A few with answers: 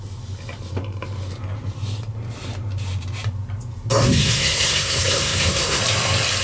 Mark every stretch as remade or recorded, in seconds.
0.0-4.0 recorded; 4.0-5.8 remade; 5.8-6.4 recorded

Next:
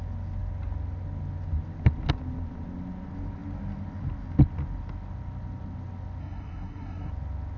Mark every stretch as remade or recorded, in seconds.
0.0-6.2 recorded; 6.2-7.1 remade; 7.1-7.6 recorded